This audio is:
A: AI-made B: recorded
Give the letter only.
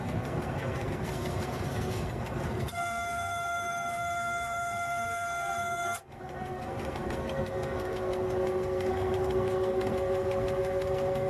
A